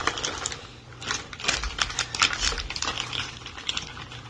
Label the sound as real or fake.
real